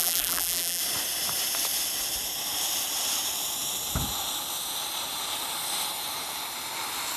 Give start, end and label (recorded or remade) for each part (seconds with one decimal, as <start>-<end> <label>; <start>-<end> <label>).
0.0-0.8 remade; 0.8-7.2 recorded